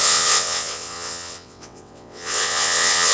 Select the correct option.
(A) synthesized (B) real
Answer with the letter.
A